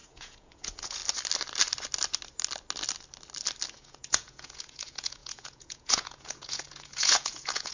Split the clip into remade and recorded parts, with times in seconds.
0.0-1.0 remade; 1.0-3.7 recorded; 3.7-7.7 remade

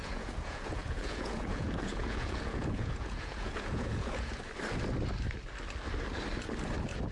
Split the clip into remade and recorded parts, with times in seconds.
0.0-4.3 remade; 4.3-7.1 recorded

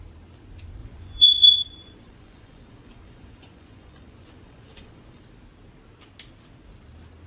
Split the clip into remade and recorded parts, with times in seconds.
0.0-0.8 recorded; 0.8-5.2 remade; 5.2-7.3 recorded

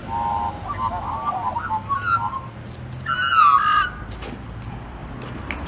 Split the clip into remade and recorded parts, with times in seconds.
0.0-5.7 recorded

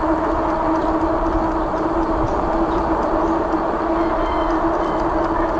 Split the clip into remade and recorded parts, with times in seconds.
0.0-1.7 recorded; 1.7-3.8 remade; 3.8-5.6 recorded

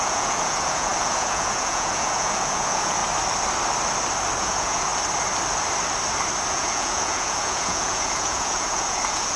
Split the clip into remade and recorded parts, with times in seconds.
0.0-3.0 remade; 3.0-4.4 recorded; 4.4-4.9 remade; 4.9-6.5 recorded; 6.5-9.4 remade

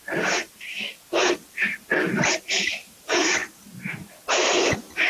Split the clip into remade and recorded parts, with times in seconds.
0.0-5.1 remade

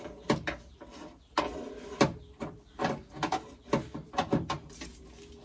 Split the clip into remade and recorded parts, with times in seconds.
0.0-5.4 recorded